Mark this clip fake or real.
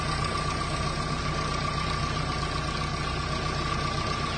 real